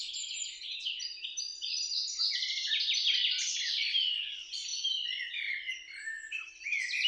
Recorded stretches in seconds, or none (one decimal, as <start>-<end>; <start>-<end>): none